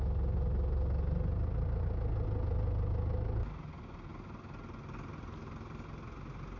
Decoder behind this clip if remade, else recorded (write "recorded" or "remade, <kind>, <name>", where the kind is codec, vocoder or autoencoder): recorded